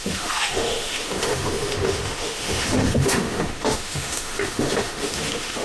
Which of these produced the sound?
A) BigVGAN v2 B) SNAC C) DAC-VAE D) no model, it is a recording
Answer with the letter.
C